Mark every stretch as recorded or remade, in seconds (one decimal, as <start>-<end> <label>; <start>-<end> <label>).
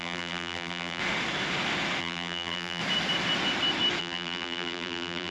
0.0-1.0 remade; 1.0-2.0 recorded; 2.0-2.8 remade; 2.8-4.0 recorded; 4.0-5.3 remade